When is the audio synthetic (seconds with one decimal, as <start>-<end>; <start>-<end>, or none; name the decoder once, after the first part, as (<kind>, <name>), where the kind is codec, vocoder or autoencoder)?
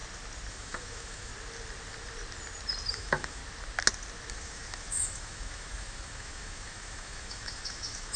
0.5-1.3 (autoencoder, DAC-VAE); 2.9-3.4; 4.3-8.2